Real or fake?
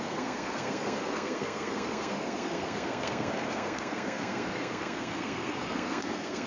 fake